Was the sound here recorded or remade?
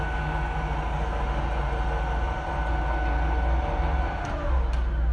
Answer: recorded